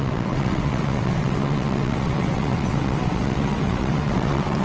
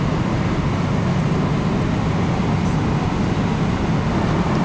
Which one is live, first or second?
second